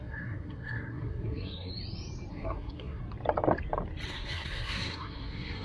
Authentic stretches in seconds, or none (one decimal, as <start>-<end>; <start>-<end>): 1.7-2.3; 3.0-4.1